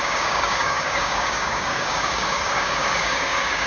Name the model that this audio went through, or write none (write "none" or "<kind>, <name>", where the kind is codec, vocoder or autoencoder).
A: codec, DAC